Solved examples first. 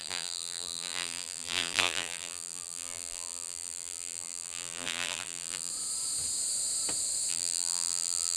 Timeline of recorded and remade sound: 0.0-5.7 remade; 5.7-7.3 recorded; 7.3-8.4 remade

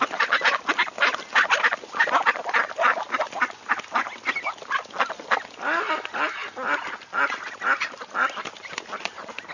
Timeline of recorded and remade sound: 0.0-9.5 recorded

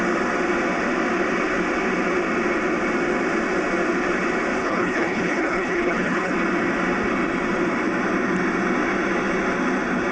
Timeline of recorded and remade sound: 0.0-4.6 recorded; 4.6-6.3 remade; 6.3-10.1 recorded

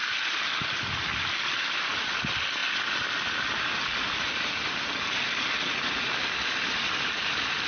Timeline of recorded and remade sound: 0.0-7.7 recorded

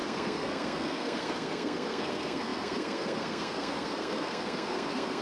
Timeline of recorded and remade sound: 0.0-5.2 remade

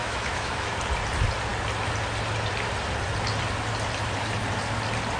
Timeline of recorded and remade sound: 0.0-0.7 remade; 0.7-5.2 recorded